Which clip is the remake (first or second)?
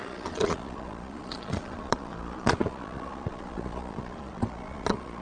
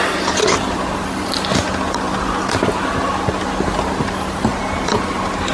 first